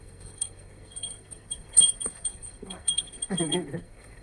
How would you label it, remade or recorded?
remade